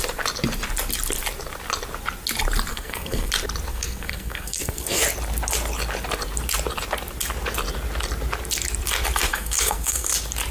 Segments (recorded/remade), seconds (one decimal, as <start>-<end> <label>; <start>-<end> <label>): 0.0-2.7 recorded; 2.7-3.3 remade; 3.3-3.7 recorded; 3.7-5.0 remade; 5.0-9.3 recorded; 9.3-10.1 remade; 10.1-10.5 recorded